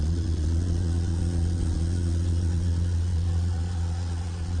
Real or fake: fake